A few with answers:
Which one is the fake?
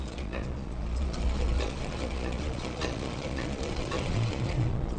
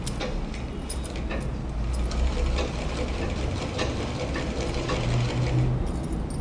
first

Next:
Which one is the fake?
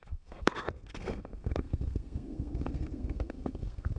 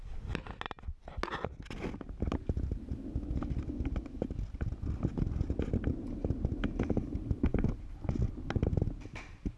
first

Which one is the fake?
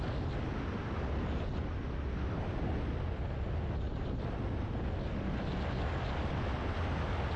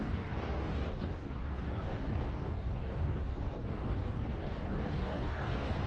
second